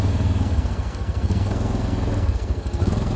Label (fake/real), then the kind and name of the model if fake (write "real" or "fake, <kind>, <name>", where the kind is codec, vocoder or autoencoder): fake, codec, SNAC